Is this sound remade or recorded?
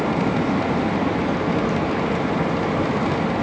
recorded